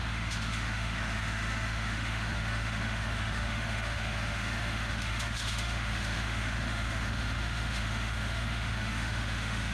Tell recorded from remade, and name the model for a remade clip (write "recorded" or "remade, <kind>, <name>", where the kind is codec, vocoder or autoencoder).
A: remade, autoencoder, DAC-VAE